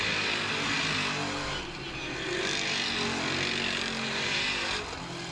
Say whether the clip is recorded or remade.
recorded